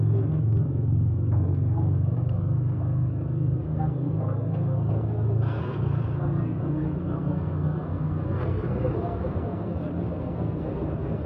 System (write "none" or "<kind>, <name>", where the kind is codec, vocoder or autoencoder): codec, SNAC